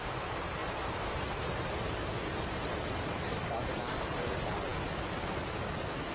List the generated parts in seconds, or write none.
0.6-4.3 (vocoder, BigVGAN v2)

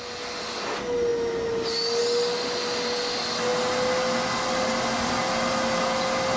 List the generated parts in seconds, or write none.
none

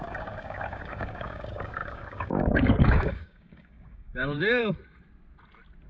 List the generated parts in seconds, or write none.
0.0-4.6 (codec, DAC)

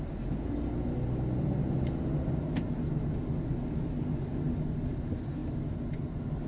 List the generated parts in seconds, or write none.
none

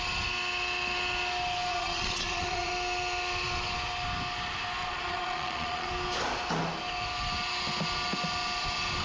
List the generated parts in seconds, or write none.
1.7-2.7 (vocoder, Vocos); 4.8-5.9